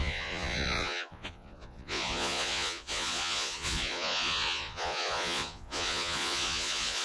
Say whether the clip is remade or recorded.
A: remade